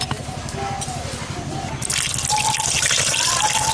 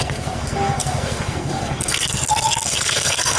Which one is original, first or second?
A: first